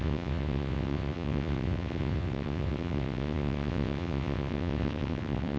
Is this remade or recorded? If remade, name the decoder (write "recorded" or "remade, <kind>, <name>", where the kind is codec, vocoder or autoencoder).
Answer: remade, vocoder, WaveNeXt